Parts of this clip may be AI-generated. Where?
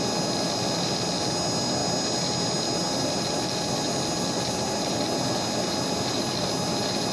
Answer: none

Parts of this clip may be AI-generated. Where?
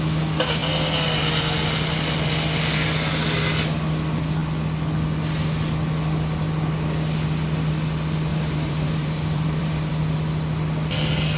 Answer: 8.3-9.9 (vocoder, BigVGAN v2)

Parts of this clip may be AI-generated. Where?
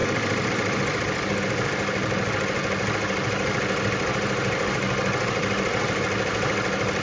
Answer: none